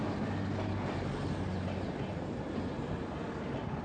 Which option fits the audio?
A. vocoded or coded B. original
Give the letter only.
B